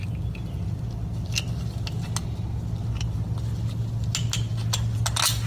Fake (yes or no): no